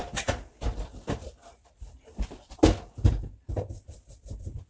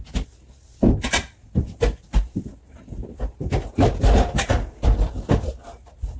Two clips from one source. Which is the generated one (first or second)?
first